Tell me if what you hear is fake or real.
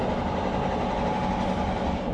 real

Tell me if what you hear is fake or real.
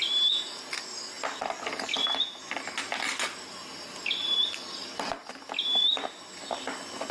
real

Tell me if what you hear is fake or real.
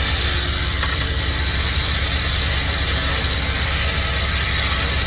real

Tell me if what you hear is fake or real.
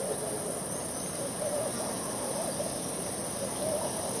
real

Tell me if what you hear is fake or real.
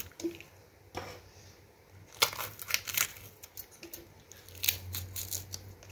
real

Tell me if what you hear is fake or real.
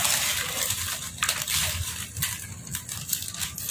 real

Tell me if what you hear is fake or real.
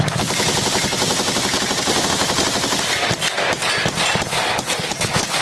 real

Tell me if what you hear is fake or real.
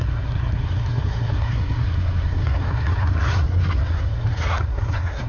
fake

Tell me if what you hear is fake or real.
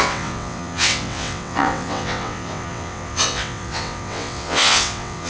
fake